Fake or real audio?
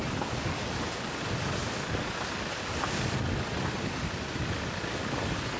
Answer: real